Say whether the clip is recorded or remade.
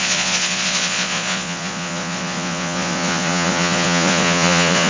remade